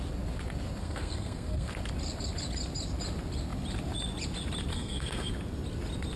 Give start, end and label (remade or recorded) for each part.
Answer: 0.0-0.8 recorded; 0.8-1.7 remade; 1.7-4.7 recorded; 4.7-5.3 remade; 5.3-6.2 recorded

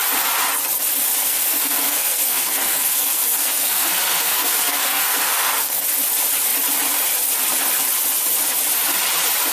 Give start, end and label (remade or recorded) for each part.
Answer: 0.0-1.2 recorded; 1.2-5.8 remade; 5.8-9.5 recorded

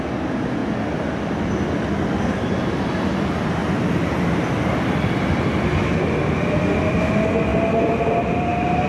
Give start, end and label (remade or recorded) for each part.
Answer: 0.0-8.9 recorded

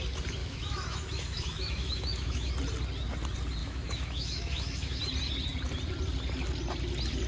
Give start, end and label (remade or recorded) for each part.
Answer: 0.0-0.4 recorded; 0.4-2.5 remade; 2.5-3.6 recorded; 3.6-5.0 remade; 5.0-7.3 recorded

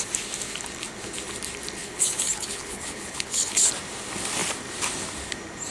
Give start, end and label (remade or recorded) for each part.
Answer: 0.0-1.8 recorded; 1.8-3.7 remade; 3.7-5.7 recorded

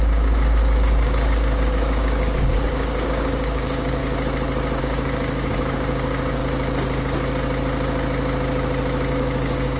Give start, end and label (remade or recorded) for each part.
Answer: 0.0-4.0 remade; 4.0-4.8 recorded; 4.8-6.4 remade; 6.4-9.1 recorded; 9.1-9.8 remade

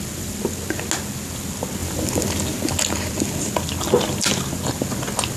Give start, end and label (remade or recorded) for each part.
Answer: 0.0-5.4 recorded